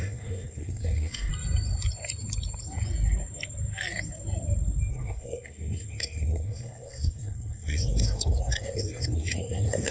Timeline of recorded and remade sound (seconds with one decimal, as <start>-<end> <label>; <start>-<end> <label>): 0.0-1.3 remade; 1.3-4.9 recorded; 4.9-9.9 remade